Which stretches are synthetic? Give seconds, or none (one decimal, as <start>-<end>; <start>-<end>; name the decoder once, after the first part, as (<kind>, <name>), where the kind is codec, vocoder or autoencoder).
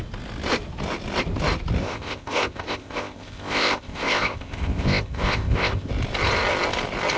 1.8-5.9 (codec, ZipCodec)